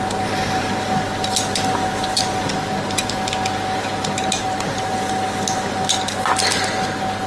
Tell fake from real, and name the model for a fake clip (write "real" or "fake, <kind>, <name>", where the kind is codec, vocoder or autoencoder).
real